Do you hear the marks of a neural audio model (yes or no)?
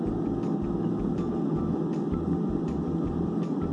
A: no